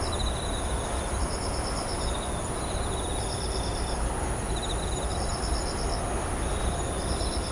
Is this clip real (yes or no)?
yes